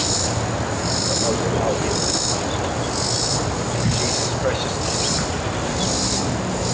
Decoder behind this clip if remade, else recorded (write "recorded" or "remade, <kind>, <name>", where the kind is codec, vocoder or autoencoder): recorded